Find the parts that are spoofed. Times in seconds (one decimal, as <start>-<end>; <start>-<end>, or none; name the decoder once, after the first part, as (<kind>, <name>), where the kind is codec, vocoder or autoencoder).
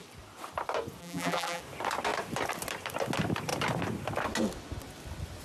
1.0-1.6 (vocoder, BigVGAN v2)